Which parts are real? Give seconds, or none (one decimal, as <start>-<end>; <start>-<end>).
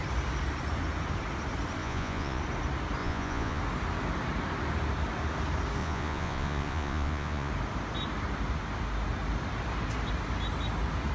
0.0-1.8; 2.4-3.0; 3.6-5.8; 7.5-11.1